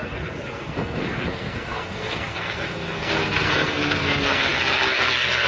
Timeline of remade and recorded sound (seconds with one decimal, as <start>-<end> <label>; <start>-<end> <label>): 0.0-5.5 remade